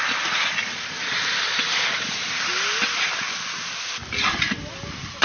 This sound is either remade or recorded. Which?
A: recorded